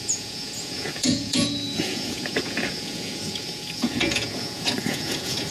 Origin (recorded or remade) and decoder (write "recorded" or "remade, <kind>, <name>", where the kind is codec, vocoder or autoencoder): remade, vocoder, Vocos